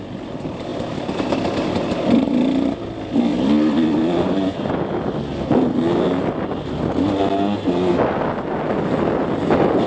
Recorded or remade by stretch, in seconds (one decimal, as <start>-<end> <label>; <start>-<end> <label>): 0.0-0.7 recorded; 0.7-1.8 remade; 1.8-3.3 recorded; 3.3-5.0 remade; 5.0-9.9 recorded